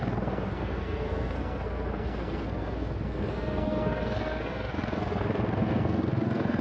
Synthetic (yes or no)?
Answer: yes